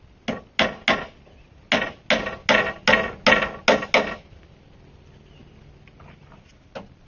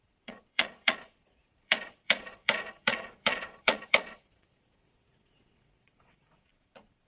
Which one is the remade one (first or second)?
second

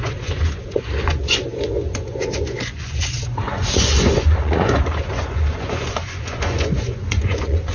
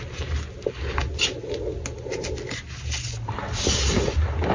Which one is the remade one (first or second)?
first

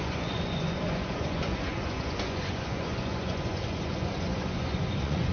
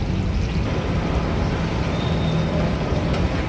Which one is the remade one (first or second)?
first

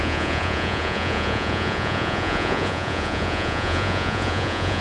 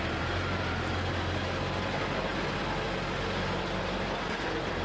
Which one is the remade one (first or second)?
first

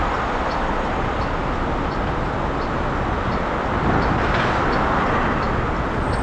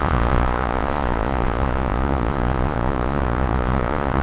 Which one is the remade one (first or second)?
second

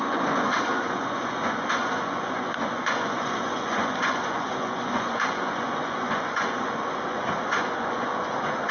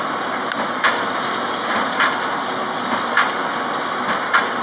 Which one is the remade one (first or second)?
first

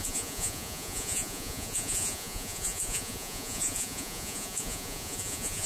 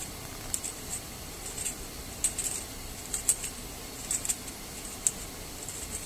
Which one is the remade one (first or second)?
first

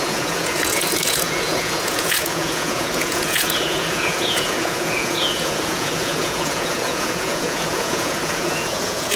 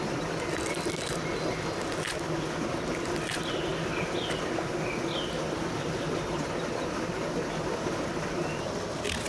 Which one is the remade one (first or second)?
first